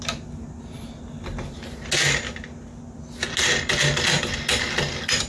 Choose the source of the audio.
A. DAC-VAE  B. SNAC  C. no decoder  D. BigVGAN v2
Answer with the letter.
C